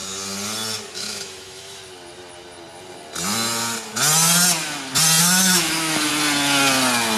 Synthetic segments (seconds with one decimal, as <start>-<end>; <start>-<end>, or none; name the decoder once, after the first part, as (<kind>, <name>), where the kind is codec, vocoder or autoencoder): 0.9-1.8 (autoencoder, DAC-VAE); 5.2-6.1